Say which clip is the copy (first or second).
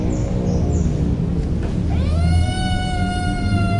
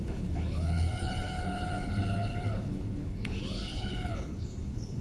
second